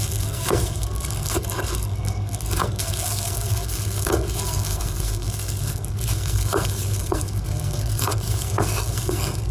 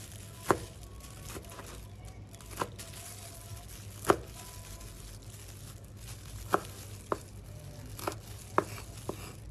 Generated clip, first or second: first